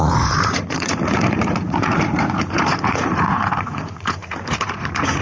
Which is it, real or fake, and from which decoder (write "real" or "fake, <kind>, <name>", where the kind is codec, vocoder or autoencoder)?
fake, vocoder, Vocos